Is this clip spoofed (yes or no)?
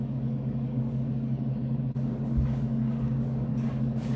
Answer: yes